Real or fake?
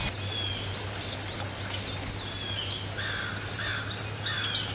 real